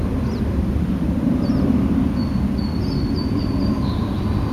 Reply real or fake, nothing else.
real